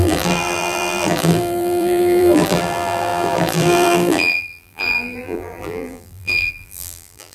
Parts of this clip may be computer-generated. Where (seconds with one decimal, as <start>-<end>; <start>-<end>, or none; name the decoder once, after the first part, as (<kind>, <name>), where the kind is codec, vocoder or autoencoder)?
0.0-7.3 (vocoder, BigVGAN v2)